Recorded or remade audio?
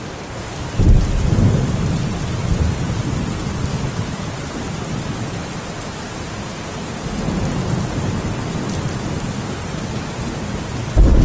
recorded